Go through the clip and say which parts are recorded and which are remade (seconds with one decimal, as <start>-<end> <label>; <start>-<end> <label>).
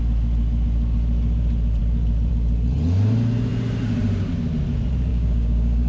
0.0-5.1 recorded; 5.1-5.9 remade